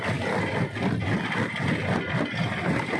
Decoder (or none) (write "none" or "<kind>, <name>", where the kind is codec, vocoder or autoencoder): none